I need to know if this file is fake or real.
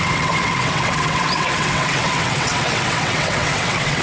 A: fake